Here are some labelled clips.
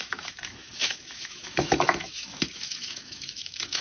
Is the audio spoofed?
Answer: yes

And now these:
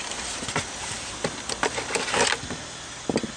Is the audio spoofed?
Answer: no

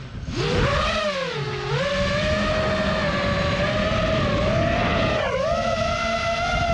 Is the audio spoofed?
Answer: no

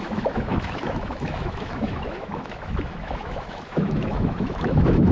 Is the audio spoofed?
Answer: yes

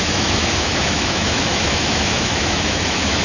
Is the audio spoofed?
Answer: yes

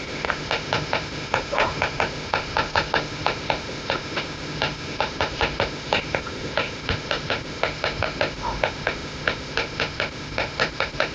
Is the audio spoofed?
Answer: yes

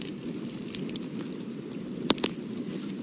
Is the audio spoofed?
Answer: no